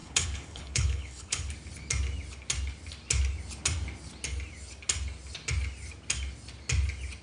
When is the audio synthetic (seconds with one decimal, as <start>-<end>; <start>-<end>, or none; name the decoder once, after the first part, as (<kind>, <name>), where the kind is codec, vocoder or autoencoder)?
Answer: 0.0-1.5 (codec, HILCodec)